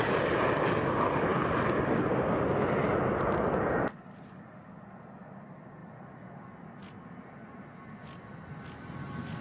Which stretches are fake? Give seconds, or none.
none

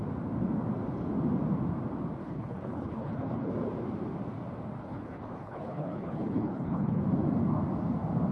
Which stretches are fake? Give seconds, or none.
2.2-3.5; 4.8-7.0

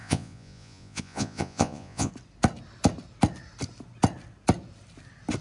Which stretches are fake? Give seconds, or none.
0.0-2.1

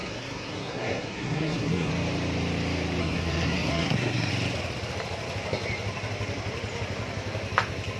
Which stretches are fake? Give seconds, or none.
0.0-1.9; 3.0-4.3